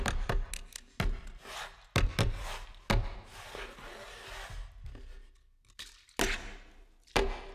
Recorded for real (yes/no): yes